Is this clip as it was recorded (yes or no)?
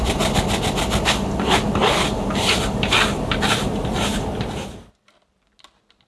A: yes